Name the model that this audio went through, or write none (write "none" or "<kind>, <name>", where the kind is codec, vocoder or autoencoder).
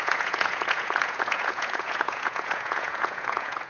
vocoder, Vocos